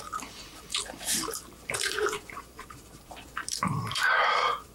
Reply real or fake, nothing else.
fake